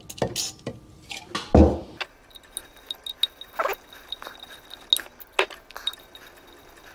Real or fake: real